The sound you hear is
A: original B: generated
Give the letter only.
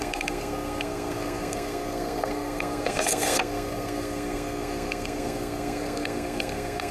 B